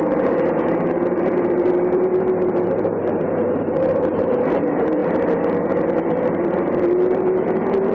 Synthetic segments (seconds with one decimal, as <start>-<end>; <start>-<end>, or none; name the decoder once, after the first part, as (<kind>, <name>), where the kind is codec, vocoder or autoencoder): 0.0-7.9 (vocoder, BigVGAN v2)